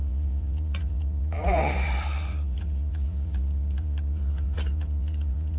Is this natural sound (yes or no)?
no